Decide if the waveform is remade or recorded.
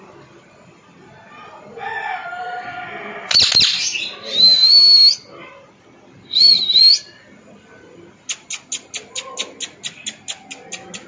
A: recorded